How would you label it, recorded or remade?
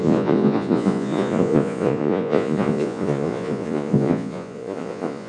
remade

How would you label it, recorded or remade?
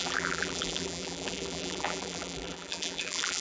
remade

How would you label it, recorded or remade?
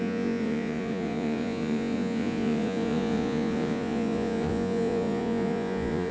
remade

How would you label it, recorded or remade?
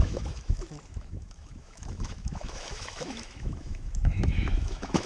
remade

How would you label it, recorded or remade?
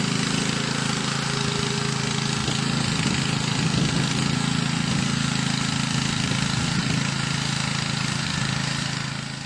recorded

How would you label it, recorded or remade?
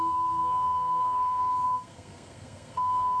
remade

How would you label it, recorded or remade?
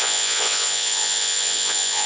remade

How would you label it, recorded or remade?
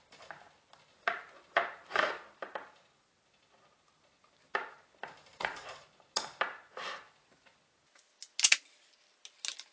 recorded